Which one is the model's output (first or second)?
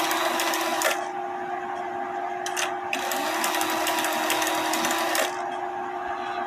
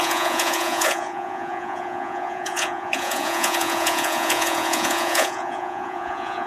second